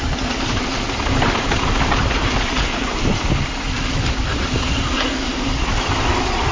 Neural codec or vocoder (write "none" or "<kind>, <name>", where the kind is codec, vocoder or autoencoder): none